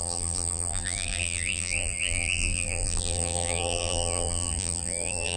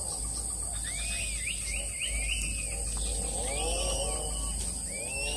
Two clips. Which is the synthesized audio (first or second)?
first